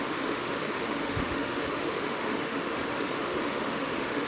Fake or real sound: fake